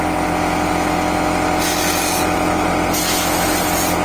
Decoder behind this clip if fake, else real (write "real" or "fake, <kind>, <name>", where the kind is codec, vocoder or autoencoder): real